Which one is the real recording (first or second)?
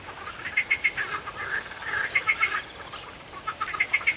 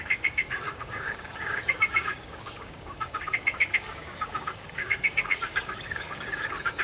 first